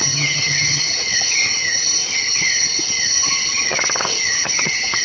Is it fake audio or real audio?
fake